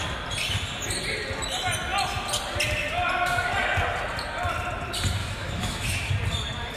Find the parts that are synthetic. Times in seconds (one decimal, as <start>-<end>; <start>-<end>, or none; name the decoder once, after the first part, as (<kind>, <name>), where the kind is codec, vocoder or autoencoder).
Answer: 5.2-6.1 (autoencoder, DAC-VAE)

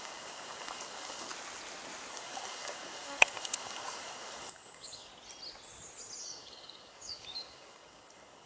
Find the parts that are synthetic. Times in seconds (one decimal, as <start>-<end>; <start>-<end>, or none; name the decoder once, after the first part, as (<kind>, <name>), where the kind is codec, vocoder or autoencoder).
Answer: 0.0-1.3 (codec, DAC); 2.1-5.1; 6.2-8.5

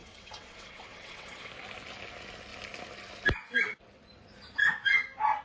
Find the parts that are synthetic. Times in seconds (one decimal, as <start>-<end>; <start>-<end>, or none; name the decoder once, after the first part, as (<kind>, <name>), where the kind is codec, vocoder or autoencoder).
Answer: 0.0-1.5 (vocoder, WaveNeXt)